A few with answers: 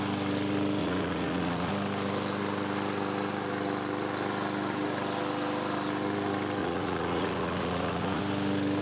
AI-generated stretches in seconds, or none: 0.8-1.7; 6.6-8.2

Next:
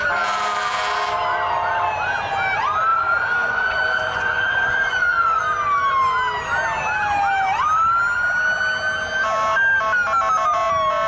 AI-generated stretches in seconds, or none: 2.9-5.4

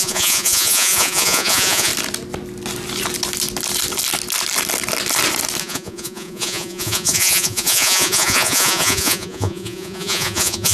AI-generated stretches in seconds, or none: 0.0-1.9; 5.6-10.7

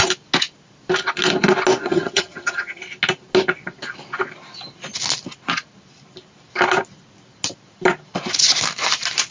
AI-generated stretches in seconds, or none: 1.8-2.8

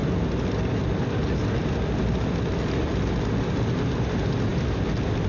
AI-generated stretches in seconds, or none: none

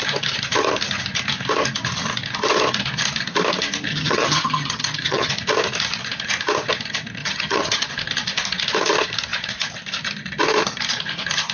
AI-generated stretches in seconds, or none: 3.9-5.3; 7.2-7.9